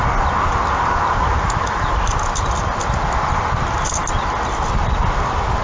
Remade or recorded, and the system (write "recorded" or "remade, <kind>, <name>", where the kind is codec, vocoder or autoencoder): recorded